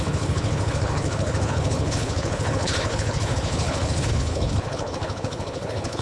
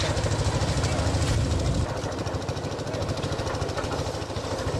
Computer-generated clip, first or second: first